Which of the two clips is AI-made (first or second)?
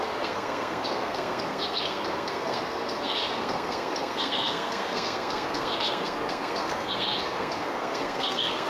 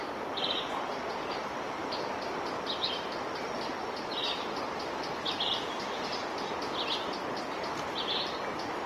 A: first